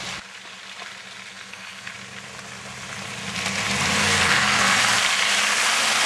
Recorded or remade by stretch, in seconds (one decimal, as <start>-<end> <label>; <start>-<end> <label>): 0.0-1.3 recorded; 1.3-1.9 remade; 1.9-4.0 recorded; 4.0-4.8 remade; 4.8-6.1 recorded